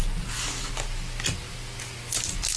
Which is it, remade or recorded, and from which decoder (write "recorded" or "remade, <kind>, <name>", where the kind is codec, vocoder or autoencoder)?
recorded